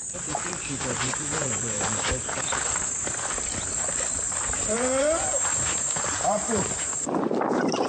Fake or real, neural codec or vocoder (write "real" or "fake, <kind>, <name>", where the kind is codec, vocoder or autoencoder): fake, vocoder, BigVGAN v2